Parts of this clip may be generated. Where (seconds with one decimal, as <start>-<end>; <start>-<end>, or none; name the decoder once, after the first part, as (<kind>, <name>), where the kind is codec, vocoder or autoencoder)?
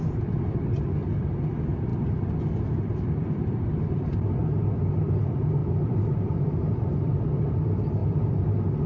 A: 0.0-1.9 (vocoder, BigVGAN v2); 2.6-4.4; 5.0-8.0